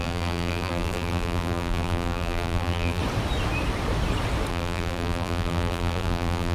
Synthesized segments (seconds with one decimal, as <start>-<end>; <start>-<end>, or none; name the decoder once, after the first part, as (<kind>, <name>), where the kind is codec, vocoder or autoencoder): 0.0-3.0 (vocoder, BigVGAN v2); 4.5-6.5